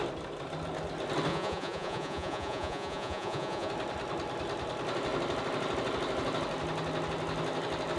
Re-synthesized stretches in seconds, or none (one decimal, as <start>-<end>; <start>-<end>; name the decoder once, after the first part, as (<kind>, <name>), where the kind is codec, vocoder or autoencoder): 1.3-3.7 (vocoder, Vocos)